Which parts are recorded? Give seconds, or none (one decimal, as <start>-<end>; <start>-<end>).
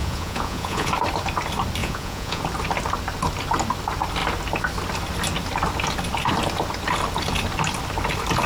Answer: 0.9-1.8; 2.4-8.5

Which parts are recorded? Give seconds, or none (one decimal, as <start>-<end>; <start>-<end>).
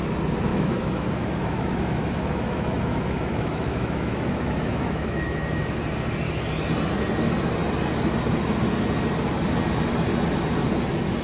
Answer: 0.0-0.5; 5.6-11.2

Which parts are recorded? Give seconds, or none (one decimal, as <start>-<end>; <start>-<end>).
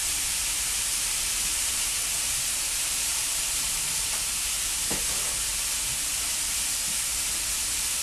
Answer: 4.5-8.0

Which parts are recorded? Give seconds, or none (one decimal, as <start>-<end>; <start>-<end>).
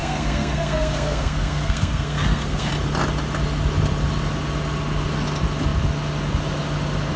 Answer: 2.7-7.2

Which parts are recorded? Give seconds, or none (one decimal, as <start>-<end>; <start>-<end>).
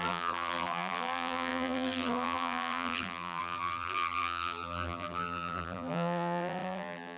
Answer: none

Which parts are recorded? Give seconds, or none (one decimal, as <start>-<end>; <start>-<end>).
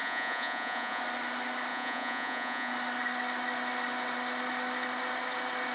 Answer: 1.0-1.7; 2.7-5.7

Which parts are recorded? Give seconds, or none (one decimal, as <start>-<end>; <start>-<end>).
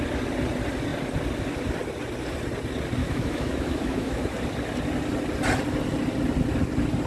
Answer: 0.0-3.0; 4.2-7.1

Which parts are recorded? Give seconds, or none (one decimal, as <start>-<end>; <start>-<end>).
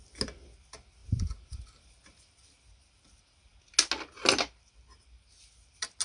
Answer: 0.0-1.0; 2.2-6.0